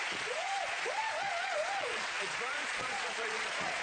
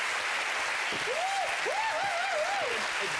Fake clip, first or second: first